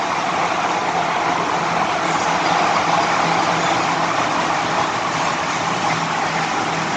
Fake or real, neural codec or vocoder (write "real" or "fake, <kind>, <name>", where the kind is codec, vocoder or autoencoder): real